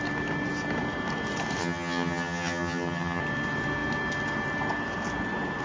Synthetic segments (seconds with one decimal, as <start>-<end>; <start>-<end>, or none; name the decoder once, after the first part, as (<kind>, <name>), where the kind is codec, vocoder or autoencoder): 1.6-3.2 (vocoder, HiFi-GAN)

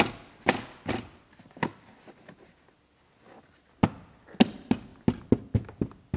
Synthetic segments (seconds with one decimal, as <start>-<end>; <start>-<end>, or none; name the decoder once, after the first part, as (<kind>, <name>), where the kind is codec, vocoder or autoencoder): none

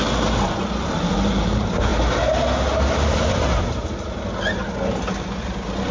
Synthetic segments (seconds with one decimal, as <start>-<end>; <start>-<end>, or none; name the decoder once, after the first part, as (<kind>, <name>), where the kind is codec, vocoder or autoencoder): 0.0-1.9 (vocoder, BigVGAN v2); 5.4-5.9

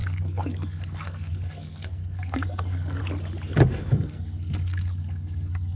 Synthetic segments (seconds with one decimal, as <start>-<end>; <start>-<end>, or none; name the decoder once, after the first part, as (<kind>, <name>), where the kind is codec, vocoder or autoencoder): 0.0-3.0 (codec, SNAC); 3.7-5.8

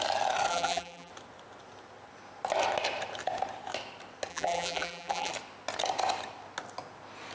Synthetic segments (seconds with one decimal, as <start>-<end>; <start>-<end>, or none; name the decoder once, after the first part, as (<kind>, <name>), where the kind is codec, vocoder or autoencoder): 0.5-1.1 (vocoder, BigVGAN v2); 4.3-5.3

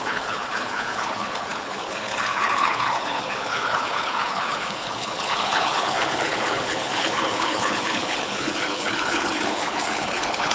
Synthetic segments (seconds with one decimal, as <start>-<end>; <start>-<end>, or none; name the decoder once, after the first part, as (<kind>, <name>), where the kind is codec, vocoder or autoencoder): 0.0-10.5 (codec, HILCodec)

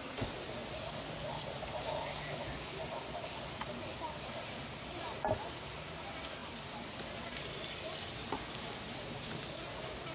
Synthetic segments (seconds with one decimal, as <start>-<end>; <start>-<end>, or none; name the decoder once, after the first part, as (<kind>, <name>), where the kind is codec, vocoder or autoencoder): none